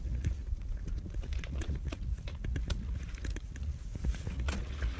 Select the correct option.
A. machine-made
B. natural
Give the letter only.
A